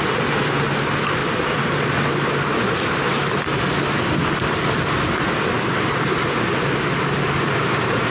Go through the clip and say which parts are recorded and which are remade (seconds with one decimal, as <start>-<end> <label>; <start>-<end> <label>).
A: 0.0-8.1 recorded